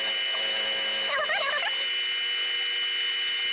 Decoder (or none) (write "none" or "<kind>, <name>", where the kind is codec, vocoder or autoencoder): none